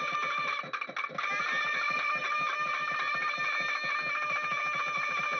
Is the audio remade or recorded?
recorded